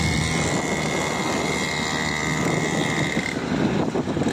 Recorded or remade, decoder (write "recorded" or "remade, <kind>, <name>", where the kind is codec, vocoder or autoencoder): recorded